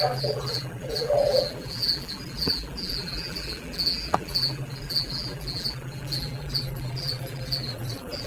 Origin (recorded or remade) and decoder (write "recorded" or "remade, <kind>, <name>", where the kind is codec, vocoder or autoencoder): remade, vocoder, BigVGAN v2